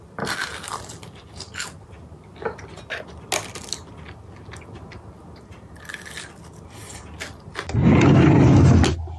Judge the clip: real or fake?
real